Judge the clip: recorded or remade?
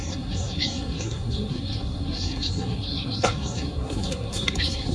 remade